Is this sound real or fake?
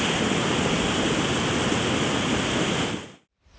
real